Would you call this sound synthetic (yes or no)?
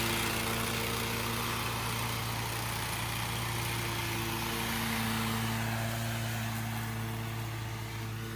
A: no